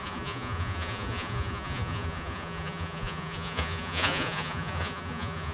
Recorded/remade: remade